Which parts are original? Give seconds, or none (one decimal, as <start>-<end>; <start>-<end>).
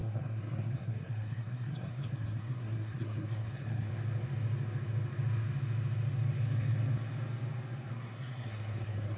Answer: 3.9-7.9